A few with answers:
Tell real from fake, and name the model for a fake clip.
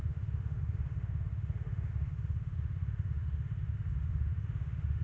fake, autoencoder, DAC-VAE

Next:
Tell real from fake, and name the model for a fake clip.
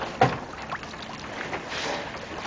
real